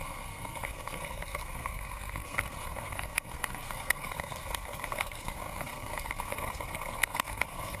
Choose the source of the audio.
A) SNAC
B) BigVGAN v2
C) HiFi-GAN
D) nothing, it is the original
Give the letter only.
A